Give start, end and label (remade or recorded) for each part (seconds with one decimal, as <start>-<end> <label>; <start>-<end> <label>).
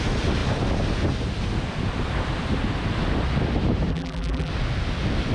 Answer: 0.0-3.9 recorded; 3.9-4.5 remade; 4.5-5.3 recorded